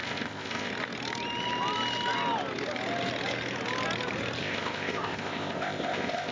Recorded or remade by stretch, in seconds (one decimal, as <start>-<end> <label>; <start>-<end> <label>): 0.0-0.7 remade; 0.7-4.4 recorded; 4.4-6.3 remade